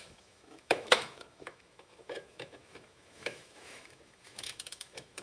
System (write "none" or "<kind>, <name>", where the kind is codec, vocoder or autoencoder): autoencoder, DAC-VAE